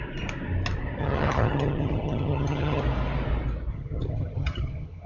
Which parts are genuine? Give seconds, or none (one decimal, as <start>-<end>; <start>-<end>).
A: 0.0-1.0; 2.8-3.7